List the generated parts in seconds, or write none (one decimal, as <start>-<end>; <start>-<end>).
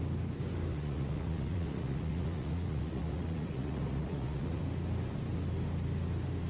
0.7-4.6